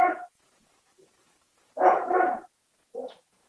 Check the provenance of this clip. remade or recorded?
remade